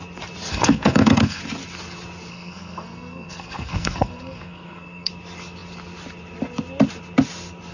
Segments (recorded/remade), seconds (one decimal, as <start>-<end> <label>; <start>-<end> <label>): 0.0-0.5 recorded; 0.5-1.4 remade; 1.4-2.3 recorded; 2.3-5.1 remade; 5.1-7.7 recorded